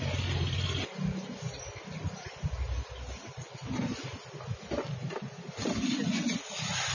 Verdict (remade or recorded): recorded